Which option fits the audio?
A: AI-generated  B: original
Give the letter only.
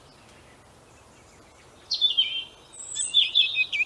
B